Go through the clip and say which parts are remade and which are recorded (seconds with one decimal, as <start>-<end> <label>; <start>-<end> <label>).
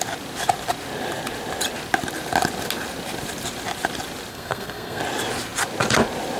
0.0-4.3 recorded; 4.3-5.0 remade; 5.0-6.4 recorded